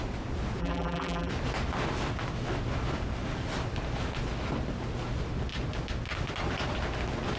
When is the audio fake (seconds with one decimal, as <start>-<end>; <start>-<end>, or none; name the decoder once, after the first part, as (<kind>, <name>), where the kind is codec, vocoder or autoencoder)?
0.6-1.3 (vocoder, BigVGAN v2)